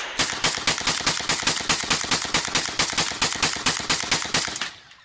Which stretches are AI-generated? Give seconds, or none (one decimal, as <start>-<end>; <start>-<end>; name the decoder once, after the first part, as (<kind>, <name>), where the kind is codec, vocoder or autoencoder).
none